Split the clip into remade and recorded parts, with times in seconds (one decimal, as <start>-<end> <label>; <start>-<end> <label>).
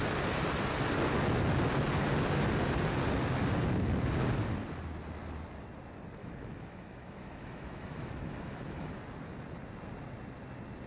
0.0-6.2 recorded; 6.2-9.0 remade; 9.0-10.9 recorded